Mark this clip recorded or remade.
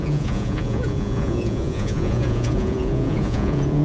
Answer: remade